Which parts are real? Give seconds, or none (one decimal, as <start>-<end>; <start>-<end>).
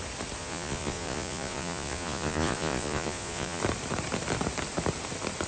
0.0-0.4; 3.6-5.5